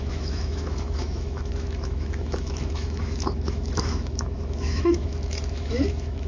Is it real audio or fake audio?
fake